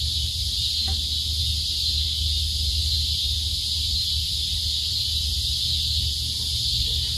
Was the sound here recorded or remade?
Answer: recorded